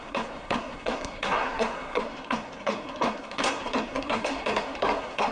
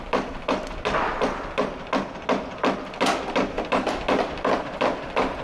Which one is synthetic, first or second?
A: first